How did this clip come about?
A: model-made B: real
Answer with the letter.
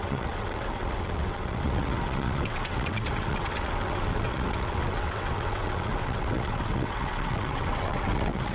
A